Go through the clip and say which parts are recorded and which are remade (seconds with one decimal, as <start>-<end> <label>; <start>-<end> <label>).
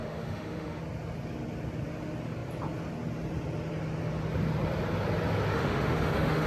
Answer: 0.0-0.8 remade; 0.8-5.5 recorded; 5.5-6.5 remade